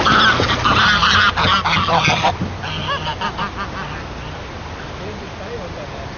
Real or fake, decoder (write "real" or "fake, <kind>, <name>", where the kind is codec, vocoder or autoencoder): real